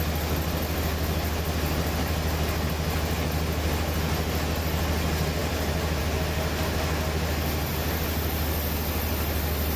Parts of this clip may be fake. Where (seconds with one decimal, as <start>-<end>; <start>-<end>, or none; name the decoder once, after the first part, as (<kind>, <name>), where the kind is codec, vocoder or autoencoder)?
none